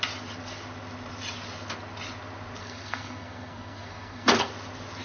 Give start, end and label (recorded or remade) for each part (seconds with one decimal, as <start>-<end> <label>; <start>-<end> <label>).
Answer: 0.0-2.6 recorded; 2.6-4.5 remade; 4.5-5.0 recorded